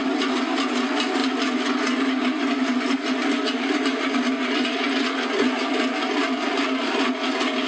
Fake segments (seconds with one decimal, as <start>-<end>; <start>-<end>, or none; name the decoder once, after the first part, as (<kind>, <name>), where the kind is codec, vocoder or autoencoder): none